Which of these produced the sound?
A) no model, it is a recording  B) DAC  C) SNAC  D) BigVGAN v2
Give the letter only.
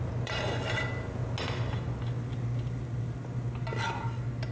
A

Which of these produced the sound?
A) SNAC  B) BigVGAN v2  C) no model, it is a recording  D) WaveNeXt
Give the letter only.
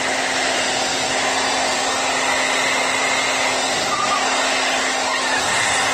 C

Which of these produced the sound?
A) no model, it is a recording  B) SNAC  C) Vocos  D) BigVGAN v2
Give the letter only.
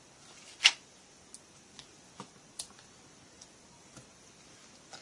A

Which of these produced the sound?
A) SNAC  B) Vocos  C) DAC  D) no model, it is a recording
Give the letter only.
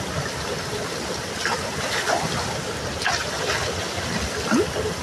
D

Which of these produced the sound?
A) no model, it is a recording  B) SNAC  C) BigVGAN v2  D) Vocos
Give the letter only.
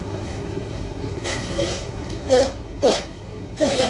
B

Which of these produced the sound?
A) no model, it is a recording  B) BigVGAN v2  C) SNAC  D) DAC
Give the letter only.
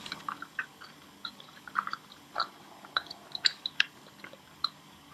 D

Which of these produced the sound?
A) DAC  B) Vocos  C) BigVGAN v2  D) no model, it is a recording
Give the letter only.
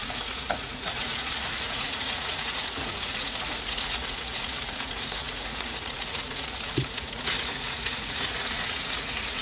B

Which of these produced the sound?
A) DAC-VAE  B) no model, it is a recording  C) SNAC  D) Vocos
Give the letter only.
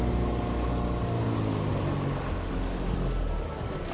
B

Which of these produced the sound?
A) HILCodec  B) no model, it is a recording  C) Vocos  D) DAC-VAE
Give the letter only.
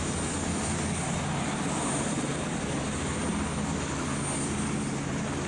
B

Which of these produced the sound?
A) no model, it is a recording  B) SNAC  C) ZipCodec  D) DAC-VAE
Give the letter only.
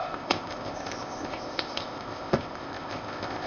C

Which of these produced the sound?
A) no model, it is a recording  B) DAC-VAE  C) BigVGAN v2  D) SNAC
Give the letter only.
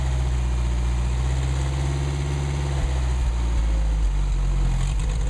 A